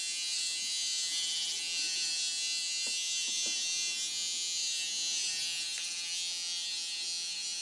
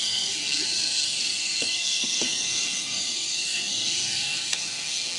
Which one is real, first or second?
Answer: first